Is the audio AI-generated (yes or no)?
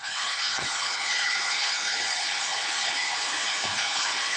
yes